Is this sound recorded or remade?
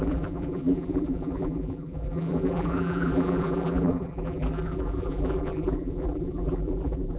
remade